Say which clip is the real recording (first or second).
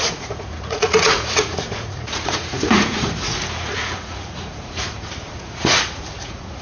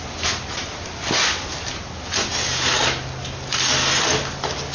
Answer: second